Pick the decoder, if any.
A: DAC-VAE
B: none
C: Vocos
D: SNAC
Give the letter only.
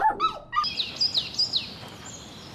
B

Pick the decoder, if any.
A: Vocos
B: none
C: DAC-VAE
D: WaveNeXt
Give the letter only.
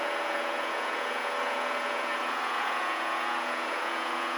A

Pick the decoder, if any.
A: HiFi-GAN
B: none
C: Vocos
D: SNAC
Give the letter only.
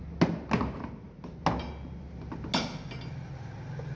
B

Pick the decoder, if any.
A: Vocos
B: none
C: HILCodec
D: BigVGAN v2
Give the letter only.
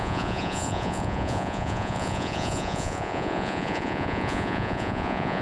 A